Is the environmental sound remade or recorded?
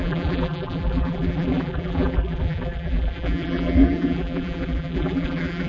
remade